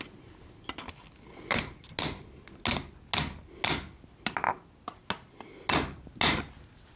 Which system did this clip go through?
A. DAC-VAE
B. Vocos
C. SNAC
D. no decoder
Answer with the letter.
D